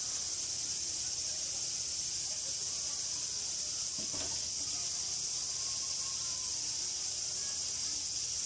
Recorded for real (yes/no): yes